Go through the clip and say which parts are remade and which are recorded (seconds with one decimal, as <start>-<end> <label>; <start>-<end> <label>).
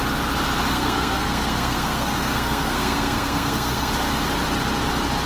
0.0-0.7 recorded; 0.7-3.9 remade; 3.9-5.3 recorded